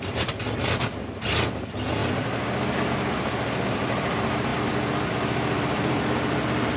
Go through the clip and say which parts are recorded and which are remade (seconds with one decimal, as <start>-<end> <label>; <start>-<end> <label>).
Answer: 0.0-2.0 remade; 2.0-2.9 recorded; 2.9-6.8 remade